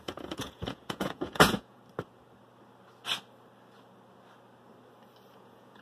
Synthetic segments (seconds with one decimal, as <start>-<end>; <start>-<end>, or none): 0.0-1.8; 5.3-5.8